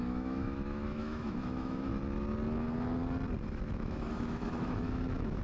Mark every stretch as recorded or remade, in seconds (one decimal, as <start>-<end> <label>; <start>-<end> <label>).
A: 0.0-1.9 remade; 1.9-3.5 recorded; 3.5-5.4 remade

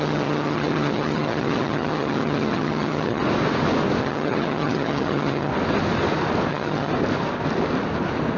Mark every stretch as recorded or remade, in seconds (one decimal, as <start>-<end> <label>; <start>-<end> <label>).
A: 0.0-3.2 remade; 3.2-4.0 recorded; 4.0-5.5 remade; 5.5-6.5 recorded; 6.5-6.9 remade; 6.9-8.4 recorded

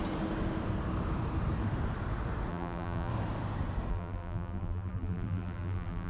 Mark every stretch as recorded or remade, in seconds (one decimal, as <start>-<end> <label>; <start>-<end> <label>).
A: 0.0-2.5 recorded; 2.5-3.1 remade; 3.1-3.9 recorded; 3.9-6.1 remade

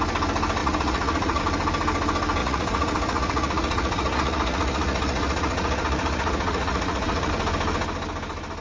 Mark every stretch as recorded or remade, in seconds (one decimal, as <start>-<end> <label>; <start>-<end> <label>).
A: 0.0-0.6 recorded; 0.6-1.4 remade; 1.4-2.4 recorded; 2.4-7.3 remade; 7.3-8.6 recorded

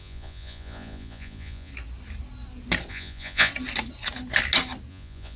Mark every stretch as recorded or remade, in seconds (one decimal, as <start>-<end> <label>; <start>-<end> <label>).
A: 0.0-1.7 remade; 1.7-2.9 recorded; 2.9-3.5 remade; 3.5-4.9 recorded; 4.9-5.4 remade

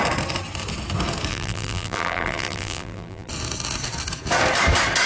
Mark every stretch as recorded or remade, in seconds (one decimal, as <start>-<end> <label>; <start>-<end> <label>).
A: 0.0-1.3 recorded; 1.3-3.3 remade; 3.3-5.1 recorded

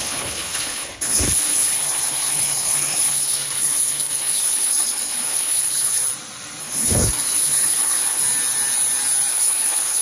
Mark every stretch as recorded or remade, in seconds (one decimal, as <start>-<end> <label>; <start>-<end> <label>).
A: 0.0-6.0 remade; 6.0-6.6 recorded; 6.6-8.2 remade; 8.2-9.3 recorded; 9.3-10.0 remade